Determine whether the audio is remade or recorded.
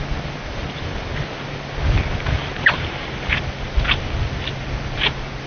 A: recorded